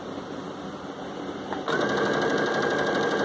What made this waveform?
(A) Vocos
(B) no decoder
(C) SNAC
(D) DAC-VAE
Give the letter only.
B